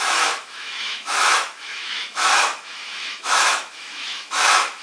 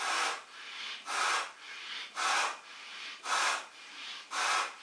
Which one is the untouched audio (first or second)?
second